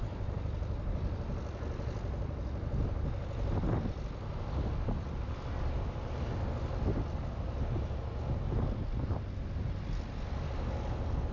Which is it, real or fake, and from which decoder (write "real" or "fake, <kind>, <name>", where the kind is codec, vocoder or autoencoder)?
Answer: real